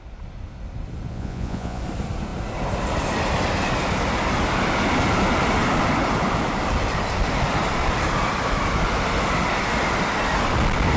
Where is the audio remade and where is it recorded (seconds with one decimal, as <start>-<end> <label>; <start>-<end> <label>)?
0.0-1.1 recorded; 1.1-1.8 remade; 1.8-11.0 recorded

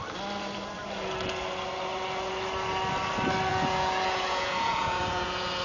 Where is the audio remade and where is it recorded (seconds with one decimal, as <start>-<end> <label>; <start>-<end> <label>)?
0.0-3.5 recorded; 3.5-5.6 remade

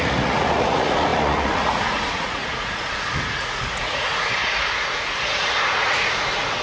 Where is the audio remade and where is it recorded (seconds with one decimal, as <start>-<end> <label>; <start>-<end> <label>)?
0.0-6.6 remade

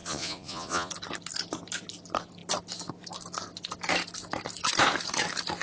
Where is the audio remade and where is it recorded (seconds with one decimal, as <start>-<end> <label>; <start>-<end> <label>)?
0.0-0.9 remade; 0.9-5.6 recorded

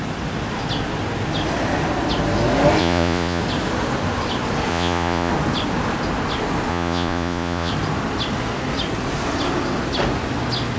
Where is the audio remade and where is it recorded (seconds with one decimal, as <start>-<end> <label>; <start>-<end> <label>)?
0.0-2.8 recorded; 2.8-3.4 remade; 3.4-4.7 recorded; 4.7-5.3 remade; 5.3-6.7 recorded; 6.7-7.7 remade; 7.7-10.8 recorded

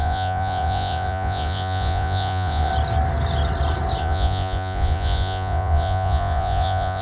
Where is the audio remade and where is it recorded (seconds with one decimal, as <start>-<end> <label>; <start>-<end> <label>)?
0.0-2.7 remade; 2.7-4.0 recorded; 4.0-7.0 remade

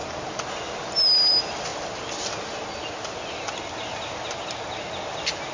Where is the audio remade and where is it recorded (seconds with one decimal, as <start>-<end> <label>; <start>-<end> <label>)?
0.0-5.5 recorded

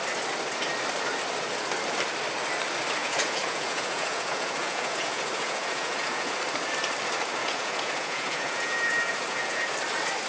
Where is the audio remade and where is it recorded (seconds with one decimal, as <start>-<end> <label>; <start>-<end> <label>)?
0.0-3.0 recorded; 3.0-6.4 remade; 6.4-7.4 recorded; 7.4-9.7 remade; 9.7-10.3 recorded